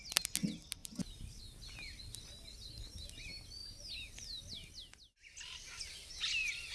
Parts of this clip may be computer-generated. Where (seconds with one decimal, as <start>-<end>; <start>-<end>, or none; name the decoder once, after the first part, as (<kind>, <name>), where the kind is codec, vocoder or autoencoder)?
0.8-1.4 (vocoder, BigVGAN v2); 3.6-4.4

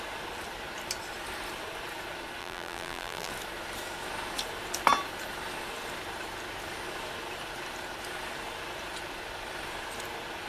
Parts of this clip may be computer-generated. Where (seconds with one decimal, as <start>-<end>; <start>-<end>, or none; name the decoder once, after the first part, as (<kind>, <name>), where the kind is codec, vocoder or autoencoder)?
2.4-3.3 (vocoder, BigVGAN v2)

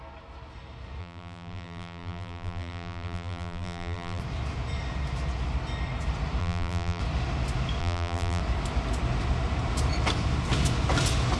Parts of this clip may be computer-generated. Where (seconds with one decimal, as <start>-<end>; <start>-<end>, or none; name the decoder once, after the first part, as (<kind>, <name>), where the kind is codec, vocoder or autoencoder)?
1.0-4.2 (vocoder, BigVGAN v2); 6.4-7.0; 7.8-8.4

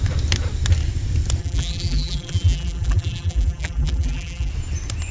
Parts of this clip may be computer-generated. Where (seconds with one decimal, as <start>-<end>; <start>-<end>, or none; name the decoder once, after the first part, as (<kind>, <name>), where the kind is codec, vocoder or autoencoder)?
1.4-4.5 (vocoder, BigVGAN v2)

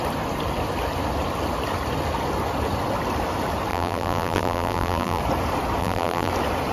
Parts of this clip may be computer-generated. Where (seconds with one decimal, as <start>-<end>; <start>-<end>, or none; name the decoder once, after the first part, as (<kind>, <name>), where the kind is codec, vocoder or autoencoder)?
3.7-5.2 (vocoder, BigVGAN v2); 5.8-6.3